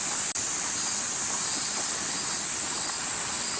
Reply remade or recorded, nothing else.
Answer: recorded